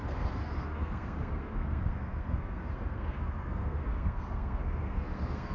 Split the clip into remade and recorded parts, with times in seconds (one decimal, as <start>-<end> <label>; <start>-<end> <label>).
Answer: 0.0-5.5 remade